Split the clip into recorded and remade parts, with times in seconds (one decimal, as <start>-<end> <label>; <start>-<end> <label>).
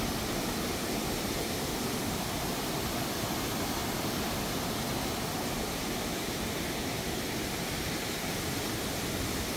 0.0-9.6 recorded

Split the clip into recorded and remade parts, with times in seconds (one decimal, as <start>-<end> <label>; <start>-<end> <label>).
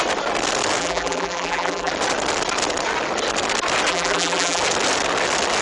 0.0-0.8 recorded; 0.8-1.9 remade; 1.9-3.9 recorded; 3.9-4.6 remade; 4.6-5.6 recorded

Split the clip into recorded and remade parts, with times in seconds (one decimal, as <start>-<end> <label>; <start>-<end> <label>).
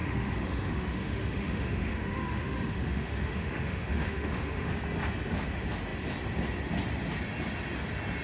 0.0-4.7 remade; 4.7-8.2 recorded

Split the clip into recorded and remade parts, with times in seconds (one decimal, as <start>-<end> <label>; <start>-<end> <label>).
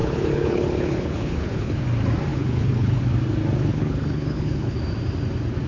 0.0-1.8 remade; 1.8-2.3 recorded; 2.3-3.0 remade; 3.0-3.7 recorded; 3.7-4.8 remade; 4.8-5.7 recorded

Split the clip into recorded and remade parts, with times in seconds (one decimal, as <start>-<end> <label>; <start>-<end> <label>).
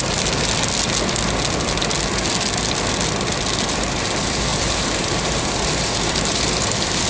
0.0-3.7 recorded; 3.7-7.1 remade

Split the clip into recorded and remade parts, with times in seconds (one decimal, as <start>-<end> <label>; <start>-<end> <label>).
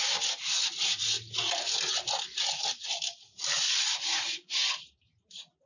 0.0-5.7 recorded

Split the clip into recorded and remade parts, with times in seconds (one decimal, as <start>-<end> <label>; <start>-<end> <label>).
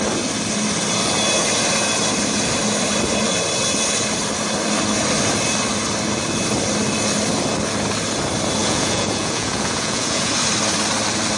0.0-8.6 recorded; 8.6-10.3 remade; 10.3-11.4 recorded